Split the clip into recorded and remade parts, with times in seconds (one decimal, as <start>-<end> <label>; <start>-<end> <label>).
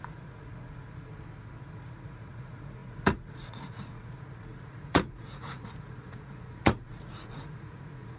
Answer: 0.0-1.1 remade; 1.1-1.6 recorded; 1.6-8.2 remade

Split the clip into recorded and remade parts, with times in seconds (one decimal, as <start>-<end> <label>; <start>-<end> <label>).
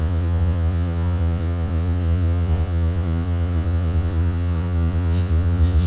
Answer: 0.0-5.9 remade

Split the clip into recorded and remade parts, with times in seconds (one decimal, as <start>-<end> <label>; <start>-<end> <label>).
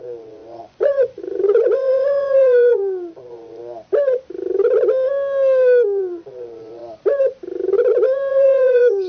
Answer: 0.0-3.6 remade; 3.6-6.0 recorded; 6.0-6.8 remade; 6.8-8.3 recorded; 8.3-9.1 remade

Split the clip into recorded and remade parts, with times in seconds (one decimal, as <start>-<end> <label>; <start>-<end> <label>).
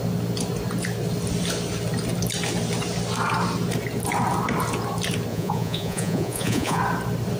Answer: 0.0-5.3 recorded; 5.3-6.8 remade; 6.8-7.4 recorded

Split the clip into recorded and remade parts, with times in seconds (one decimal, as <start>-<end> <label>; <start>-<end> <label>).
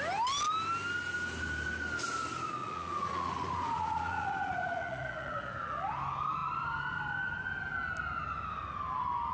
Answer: 0.0-2.6 recorded; 2.6-5.9 remade; 5.9-9.3 recorded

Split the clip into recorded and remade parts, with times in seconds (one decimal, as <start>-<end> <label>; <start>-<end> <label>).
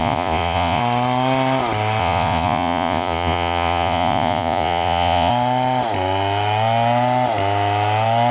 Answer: 0.0-0.8 remade; 0.8-2.0 recorded; 2.0-5.3 remade; 5.3-8.3 recorded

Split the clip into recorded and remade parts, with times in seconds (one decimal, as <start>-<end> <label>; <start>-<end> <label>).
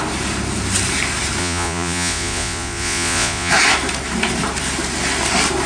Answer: 0.0-1.4 recorded; 1.4-3.5 remade; 3.5-5.7 recorded